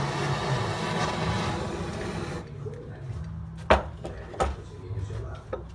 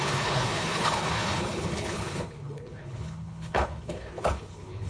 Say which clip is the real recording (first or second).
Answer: first